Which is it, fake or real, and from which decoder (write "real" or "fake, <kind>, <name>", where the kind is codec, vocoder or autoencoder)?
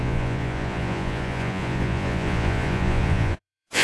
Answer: fake, vocoder, Vocos